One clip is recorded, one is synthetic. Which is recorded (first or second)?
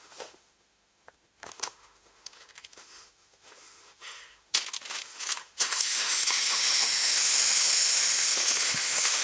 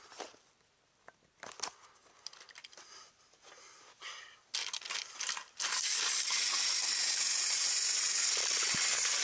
second